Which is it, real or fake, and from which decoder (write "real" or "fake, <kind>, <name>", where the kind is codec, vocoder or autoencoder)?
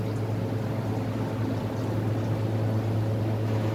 real